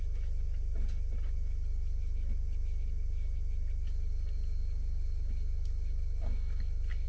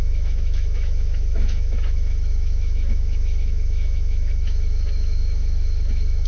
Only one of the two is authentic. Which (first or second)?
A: first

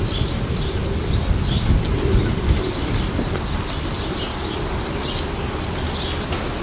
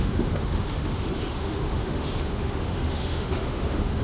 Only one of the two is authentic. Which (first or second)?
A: first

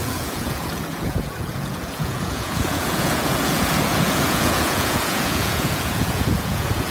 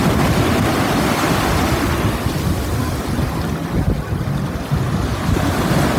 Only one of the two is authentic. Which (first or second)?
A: second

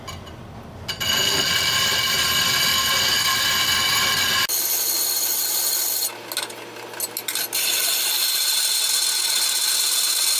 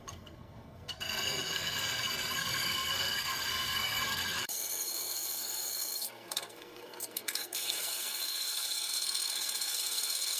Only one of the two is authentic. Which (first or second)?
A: first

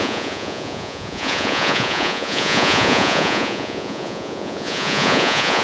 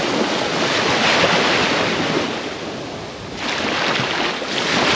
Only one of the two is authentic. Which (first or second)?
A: second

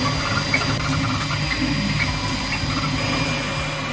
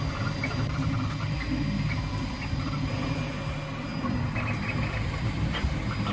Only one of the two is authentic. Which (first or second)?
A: first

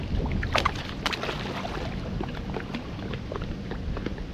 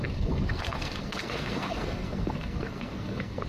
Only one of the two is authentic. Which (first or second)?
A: first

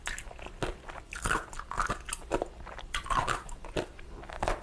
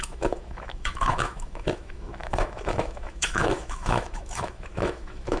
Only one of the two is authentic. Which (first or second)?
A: first